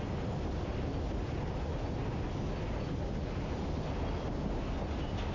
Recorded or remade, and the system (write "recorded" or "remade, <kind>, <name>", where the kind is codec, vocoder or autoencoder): recorded